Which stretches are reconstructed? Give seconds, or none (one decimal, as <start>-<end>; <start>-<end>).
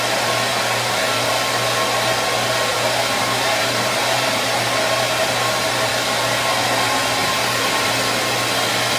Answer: 0.5-1.3; 2.7-5.9; 7.2-8.0